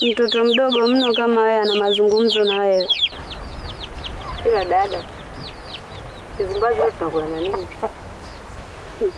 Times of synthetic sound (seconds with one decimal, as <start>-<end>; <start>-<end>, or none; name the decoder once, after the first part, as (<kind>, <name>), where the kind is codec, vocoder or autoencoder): 0.0-2.9 (autoencoder, DAC-VAE); 7.5-9.2